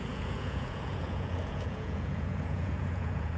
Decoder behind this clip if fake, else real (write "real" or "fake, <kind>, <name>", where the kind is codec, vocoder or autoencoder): fake, vocoder, Vocos